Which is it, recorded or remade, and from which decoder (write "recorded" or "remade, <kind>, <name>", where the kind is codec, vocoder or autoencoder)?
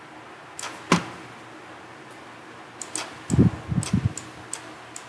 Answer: recorded